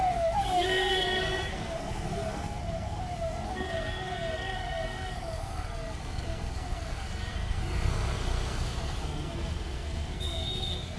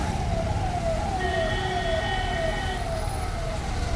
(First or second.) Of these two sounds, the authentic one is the second